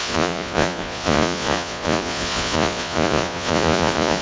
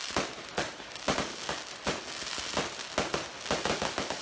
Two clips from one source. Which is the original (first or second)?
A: second